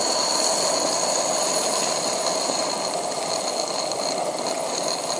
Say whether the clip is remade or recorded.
recorded